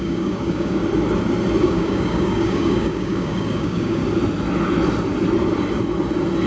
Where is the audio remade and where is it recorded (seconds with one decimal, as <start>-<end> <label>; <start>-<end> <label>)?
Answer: 0.0-0.8 remade; 0.8-1.6 recorded; 1.6-4.0 remade; 4.0-6.5 recorded